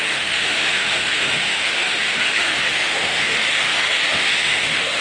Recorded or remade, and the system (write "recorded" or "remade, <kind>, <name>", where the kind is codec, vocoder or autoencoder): remade, autoencoder, DAC-VAE